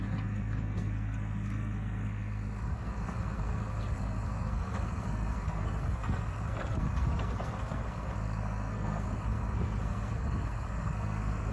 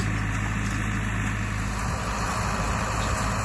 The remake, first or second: first